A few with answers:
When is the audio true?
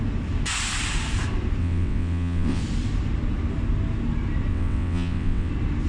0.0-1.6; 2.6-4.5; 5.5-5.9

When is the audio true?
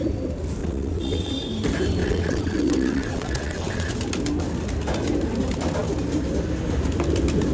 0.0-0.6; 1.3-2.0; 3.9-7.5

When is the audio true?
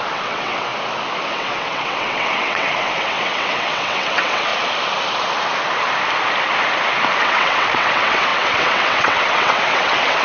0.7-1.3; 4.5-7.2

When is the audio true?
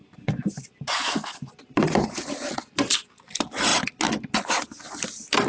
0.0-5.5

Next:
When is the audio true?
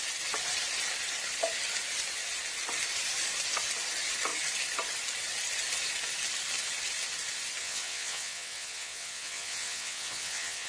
0.0-7.6